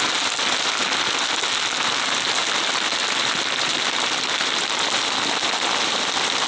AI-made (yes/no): no